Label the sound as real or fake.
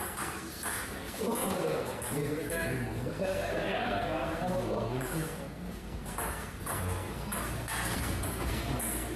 fake